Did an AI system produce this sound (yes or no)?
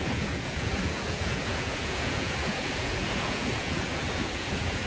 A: yes